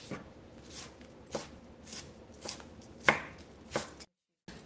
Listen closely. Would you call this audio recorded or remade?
recorded